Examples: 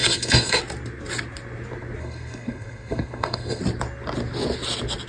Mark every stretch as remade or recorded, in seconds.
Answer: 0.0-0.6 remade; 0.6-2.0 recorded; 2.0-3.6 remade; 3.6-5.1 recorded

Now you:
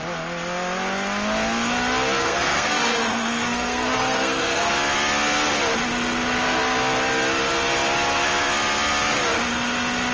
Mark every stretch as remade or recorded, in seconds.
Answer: 0.0-2.2 recorded; 2.2-4.7 remade; 4.7-10.1 recorded

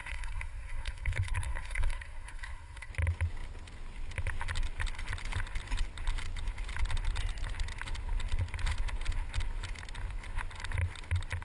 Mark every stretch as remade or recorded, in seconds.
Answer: 0.0-2.9 remade; 2.9-11.4 recorded